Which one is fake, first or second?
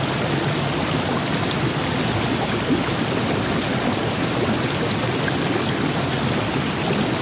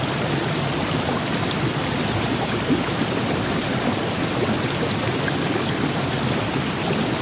second